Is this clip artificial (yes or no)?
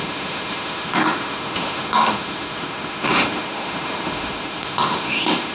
yes